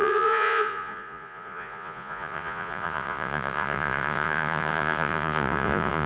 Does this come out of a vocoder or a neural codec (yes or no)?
yes